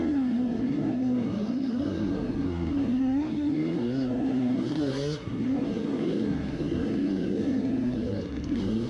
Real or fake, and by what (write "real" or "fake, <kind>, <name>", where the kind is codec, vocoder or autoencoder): fake, codec, SNAC